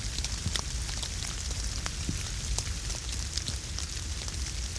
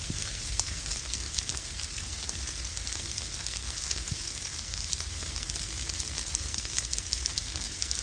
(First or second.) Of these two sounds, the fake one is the second